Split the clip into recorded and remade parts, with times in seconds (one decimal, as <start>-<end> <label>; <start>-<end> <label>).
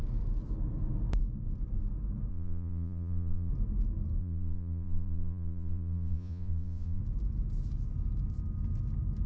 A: 0.0-2.3 recorded; 2.3-3.5 remade; 3.5-4.2 recorded; 4.2-7.0 remade; 7.0-9.3 recorded